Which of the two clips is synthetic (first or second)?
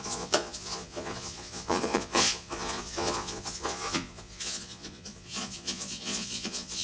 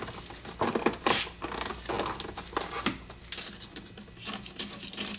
first